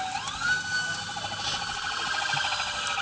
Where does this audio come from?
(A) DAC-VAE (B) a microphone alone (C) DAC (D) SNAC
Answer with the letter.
B